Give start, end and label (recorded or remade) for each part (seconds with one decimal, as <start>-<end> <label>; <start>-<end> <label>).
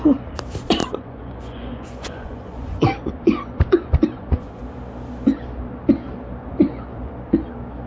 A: 0.0-0.8 recorded; 0.8-4.6 remade; 4.6-6.5 recorded; 6.5-7.1 remade; 7.1-7.9 recorded